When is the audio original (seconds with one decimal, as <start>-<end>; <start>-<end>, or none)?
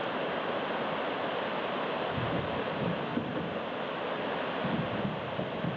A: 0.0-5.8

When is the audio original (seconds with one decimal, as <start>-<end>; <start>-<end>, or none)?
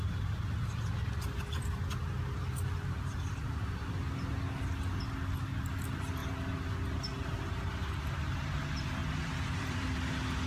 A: 0.0-9.0; 10.0-10.5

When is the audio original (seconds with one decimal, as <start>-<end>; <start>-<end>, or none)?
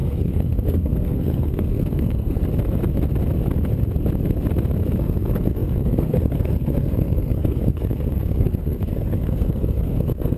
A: 2.4-5.0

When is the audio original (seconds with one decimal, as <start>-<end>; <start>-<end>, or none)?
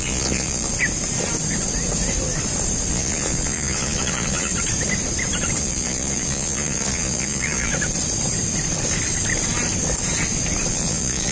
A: 0.7-2.9; 4.5-5.6; 7.7-10.7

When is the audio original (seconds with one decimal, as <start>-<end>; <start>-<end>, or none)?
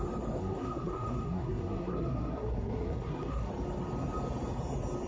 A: 0.0-0.4; 3.5-5.1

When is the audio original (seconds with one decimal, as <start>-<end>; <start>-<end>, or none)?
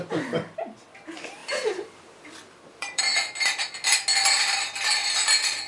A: 0.0-1.4; 3.0-5.7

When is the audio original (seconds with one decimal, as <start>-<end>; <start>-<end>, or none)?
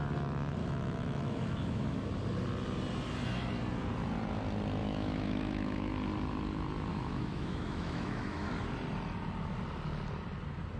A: 0.0-0.6; 2.0-4.8; 5.9-6.9; 8.5-10.8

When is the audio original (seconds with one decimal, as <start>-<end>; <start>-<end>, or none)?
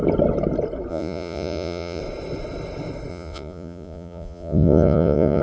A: 0.0-0.9; 2.0-3.1